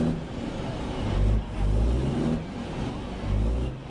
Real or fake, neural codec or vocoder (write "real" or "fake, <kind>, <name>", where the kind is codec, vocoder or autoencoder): real